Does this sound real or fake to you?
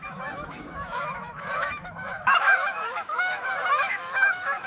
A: fake